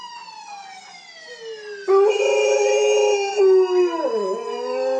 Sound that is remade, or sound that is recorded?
recorded